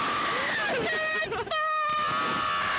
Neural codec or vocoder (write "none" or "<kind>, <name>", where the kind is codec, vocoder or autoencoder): none